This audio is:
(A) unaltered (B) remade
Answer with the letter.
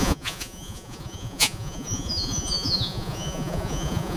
B